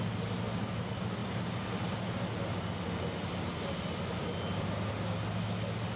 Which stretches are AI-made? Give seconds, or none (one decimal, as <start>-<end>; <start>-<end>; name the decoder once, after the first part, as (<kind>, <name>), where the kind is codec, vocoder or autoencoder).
none